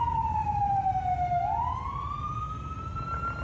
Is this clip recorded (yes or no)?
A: yes